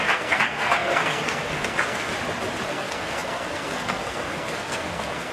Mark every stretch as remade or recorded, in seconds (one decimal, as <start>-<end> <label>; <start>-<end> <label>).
0.0-2.1 remade; 2.1-2.7 recorded; 2.7-5.3 remade